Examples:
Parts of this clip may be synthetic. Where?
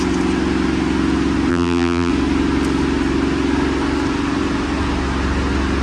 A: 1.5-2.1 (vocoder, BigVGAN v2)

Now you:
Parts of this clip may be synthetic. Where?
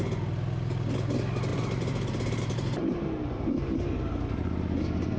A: 1.5-4.0 (vocoder, BigVGAN v2)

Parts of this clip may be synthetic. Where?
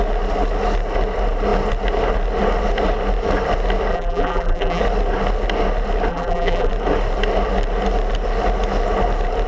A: 3.9-4.8 (vocoder, BigVGAN v2); 6.1-6.7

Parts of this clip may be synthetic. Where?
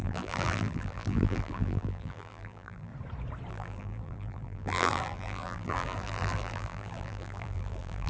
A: 0.0-2.9 (vocoder, BigVGAN v2); 3.5-8.1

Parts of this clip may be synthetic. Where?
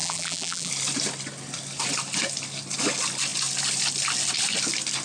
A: 0.0-0.7 (vocoder, BigVGAN v2)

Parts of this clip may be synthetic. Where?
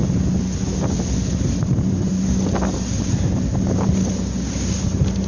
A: none